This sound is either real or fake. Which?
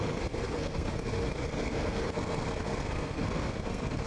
fake